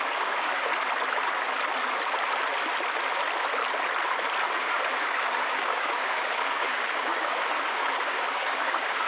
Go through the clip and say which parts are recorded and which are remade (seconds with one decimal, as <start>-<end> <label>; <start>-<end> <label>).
0.0-0.7 remade; 0.7-4.5 recorded; 4.5-9.1 remade